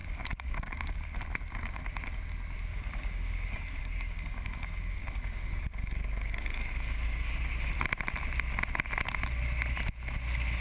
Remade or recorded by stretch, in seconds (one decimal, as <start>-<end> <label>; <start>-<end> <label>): 0.0-1.2 remade; 1.2-2.7 recorded; 2.7-7.7 remade; 7.7-10.6 recorded